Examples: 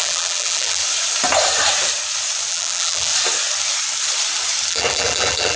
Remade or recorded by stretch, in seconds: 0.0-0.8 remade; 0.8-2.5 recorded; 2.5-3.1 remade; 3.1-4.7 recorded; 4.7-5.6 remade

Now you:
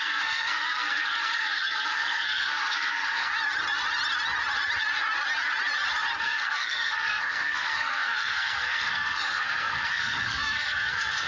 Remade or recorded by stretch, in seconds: 0.0-3.3 remade; 3.3-6.2 recorded; 6.2-11.3 remade

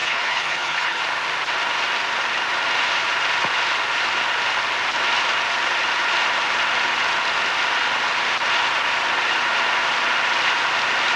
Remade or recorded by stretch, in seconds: 0.0-1.0 remade; 1.0-11.2 recorded

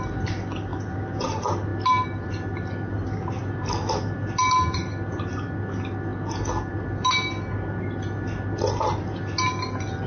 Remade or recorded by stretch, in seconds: 0.0-10.1 recorded

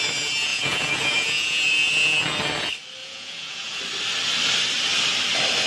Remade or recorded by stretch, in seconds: 0.0-0.5 recorded; 0.5-1.9 remade; 1.9-3.0 recorded; 3.0-3.8 remade; 3.8-5.7 recorded

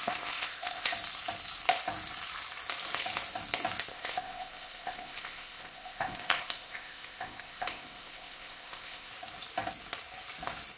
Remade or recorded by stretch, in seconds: 0.0-0.9 remade; 0.9-3.9 recorded; 3.9-9.1 remade; 9.1-10.8 recorded

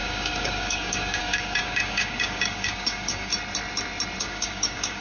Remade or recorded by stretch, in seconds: 0.0-3.3 remade; 3.3-4.2 recorded; 4.2-5.0 remade